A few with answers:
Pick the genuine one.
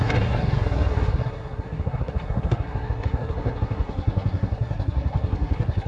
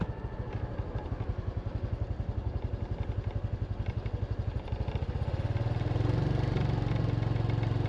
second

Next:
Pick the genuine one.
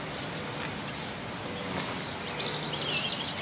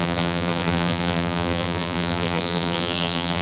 first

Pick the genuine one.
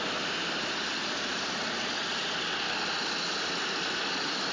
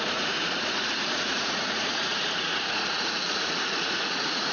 first